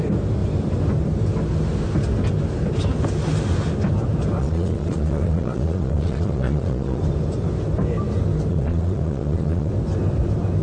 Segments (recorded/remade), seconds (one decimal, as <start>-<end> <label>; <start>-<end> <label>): 0.0-4.4 recorded; 4.4-7.0 remade; 7.0-8.5 recorded; 8.5-9.7 remade; 9.7-10.6 recorded